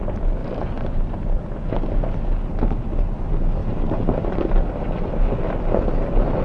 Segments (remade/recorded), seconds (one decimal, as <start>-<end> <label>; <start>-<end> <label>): 0.0-0.4 recorded; 0.4-1.4 remade; 1.4-3.6 recorded; 3.6-4.9 remade; 4.9-6.4 recorded